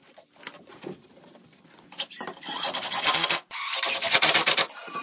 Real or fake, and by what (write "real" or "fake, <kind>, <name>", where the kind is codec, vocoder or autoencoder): real